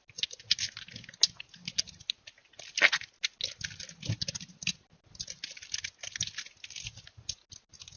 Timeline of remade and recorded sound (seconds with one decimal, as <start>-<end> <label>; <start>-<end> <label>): 0.0-8.0 recorded